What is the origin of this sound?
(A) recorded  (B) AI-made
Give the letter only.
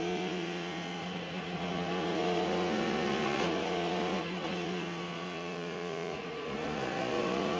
B